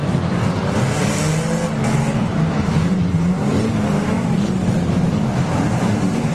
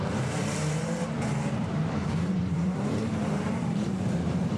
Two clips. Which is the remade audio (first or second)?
second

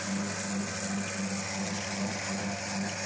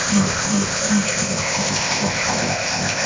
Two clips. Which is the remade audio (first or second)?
second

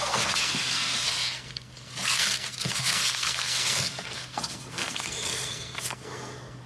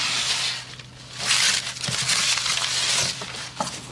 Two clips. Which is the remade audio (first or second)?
first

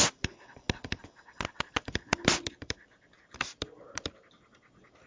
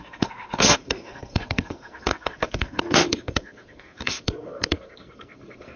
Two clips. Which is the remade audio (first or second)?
second